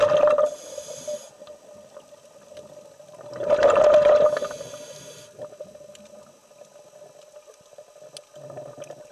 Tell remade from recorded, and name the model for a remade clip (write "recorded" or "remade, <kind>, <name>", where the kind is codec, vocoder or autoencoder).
recorded